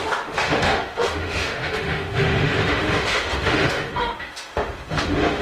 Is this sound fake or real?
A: fake